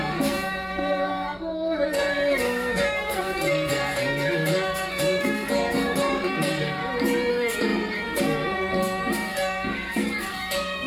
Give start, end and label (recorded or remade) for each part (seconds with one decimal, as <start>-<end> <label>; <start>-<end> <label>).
0.0-6.8 remade; 6.8-7.3 recorded; 7.3-10.9 remade